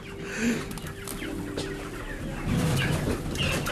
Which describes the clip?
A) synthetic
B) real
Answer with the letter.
B